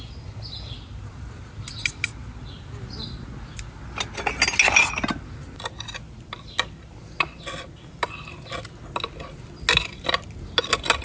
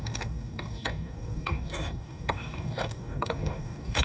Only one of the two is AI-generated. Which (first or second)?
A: second